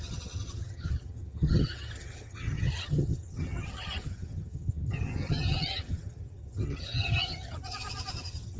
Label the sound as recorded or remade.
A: remade